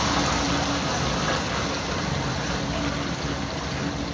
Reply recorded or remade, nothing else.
recorded